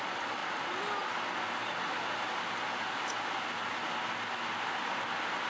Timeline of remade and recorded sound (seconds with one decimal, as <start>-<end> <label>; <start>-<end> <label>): 0.0-5.5 recorded